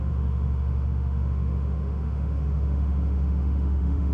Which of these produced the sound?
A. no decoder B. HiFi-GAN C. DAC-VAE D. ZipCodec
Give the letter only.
C